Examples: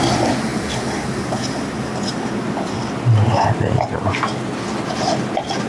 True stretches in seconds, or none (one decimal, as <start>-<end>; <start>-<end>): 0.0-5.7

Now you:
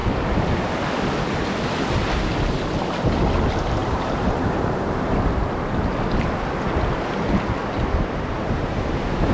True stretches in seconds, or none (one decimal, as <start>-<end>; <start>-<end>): 0.7-3.8; 5.6-9.3

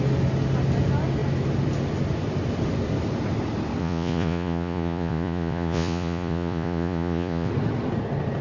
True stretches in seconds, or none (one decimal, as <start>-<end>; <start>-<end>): 0.0-3.8; 7.5-8.4

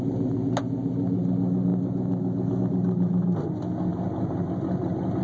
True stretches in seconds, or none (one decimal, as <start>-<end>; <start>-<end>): 0.0-5.2

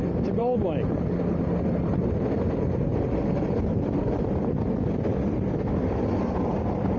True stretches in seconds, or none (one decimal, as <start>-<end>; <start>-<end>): 0.0-7.0

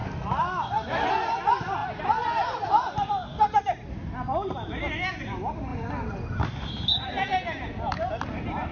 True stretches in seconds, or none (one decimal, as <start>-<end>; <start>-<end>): 0.0-8.7

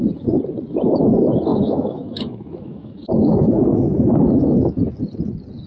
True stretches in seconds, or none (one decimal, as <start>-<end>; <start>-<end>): 0.0-1.5; 4.9-5.7

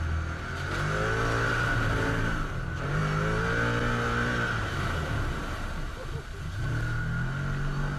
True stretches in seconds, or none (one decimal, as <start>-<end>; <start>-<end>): 0.0-8.0